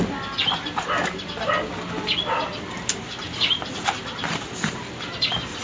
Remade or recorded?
recorded